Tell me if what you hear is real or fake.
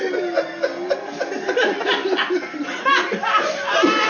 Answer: real